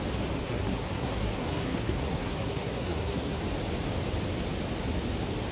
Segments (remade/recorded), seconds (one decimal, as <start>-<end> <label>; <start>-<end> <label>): 0.0-0.4 recorded; 0.4-3.4 remade; 3.4-5.5 recorded